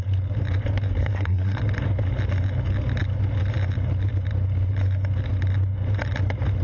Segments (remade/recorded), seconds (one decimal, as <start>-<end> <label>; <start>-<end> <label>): 0.0-1.0 recorded; 1.0-1.6 remade; 1.6-6.6 recorded

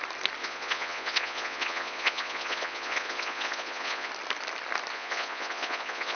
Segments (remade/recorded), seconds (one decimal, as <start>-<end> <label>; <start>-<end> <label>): 0.0-0.4 recorded; 0.4-4.1 remade; 4.1-4.9 recorded; 4.9-6.2 remade

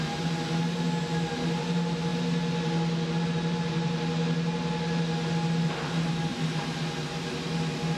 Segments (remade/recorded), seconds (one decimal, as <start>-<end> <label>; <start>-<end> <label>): 0.0-8.0 recorded

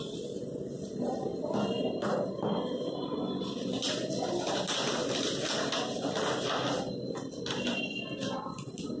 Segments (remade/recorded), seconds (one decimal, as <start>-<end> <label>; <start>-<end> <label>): 0.0-9.0 recorded

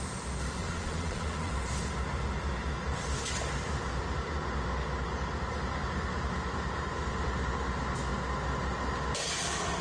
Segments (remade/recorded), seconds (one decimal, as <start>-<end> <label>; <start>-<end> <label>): 0.0-0.6 recorded; 0.6-1.5 remade; 1.5-9.8 recorded

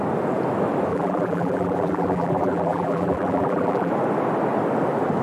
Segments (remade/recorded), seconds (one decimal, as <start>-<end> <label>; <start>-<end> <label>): 0.0-0.9 recorded; 0.9-3.9 remade; 3.9-5.2 recorded

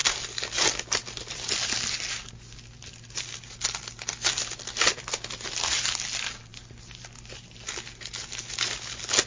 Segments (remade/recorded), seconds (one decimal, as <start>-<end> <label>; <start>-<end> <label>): 0.0-9.3 recorded

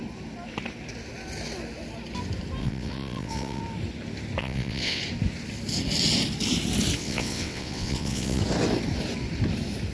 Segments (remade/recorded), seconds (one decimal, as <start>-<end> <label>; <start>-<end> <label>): 0.0-2.6 recorded; 2.6-3.6 remade; 3.6-4.4 recorded; 4.4-5.0 remade; 5.0-7.0 recorded; 7.0-8.4 remade; 8.4-9.9 recorded